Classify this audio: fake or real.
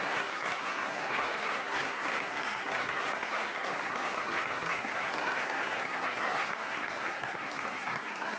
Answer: fake